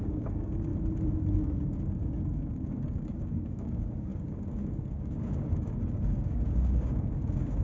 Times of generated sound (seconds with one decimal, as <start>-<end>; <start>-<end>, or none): 0.0-0.7; 1.4-7.6